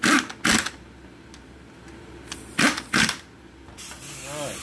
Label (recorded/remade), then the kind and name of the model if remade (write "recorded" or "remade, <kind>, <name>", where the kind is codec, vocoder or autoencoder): recorded